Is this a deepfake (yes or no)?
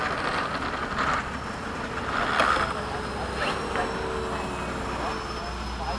no